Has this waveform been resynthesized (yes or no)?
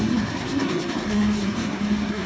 yes